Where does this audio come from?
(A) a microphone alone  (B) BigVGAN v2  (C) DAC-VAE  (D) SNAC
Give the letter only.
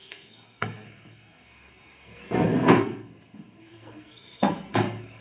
D